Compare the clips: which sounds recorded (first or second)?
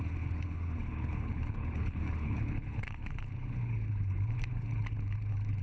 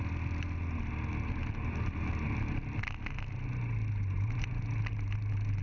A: second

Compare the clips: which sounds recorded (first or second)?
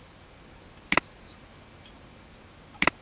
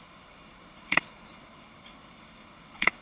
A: first